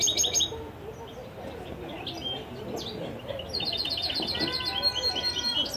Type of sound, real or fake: real